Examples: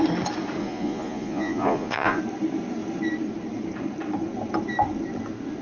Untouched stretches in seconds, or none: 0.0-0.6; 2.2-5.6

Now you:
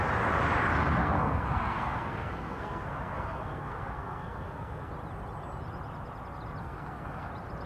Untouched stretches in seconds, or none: 0.0-1.0; 4.9-6.6; 7.3-7.7

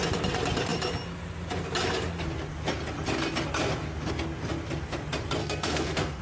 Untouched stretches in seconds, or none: 0.0-5.4

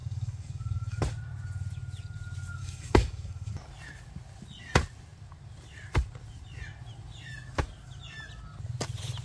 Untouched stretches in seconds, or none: 1.0-2.6; 3.5-9.2

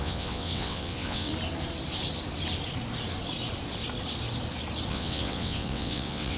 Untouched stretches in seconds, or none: 1.3-4.9

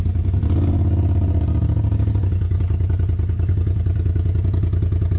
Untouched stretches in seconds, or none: 0.0-5.2

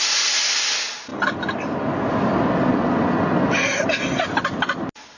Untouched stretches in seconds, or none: 0.0-5.2